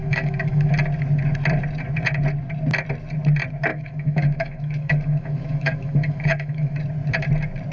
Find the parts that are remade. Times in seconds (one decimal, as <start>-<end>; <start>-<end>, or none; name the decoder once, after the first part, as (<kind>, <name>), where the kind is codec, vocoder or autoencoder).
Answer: 0.0-0.7 (autoencoder, DAC-VAE); 3.7-6.8